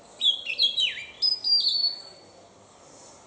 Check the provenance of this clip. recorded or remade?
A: recorded